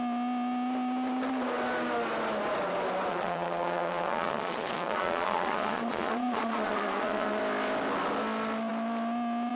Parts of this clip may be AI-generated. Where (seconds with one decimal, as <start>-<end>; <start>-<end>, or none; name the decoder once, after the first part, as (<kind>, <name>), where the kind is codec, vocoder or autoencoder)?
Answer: 3.1-7.4 (vocoder, Vocos)